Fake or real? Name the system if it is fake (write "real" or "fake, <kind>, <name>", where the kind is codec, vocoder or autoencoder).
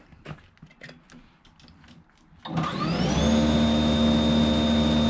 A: real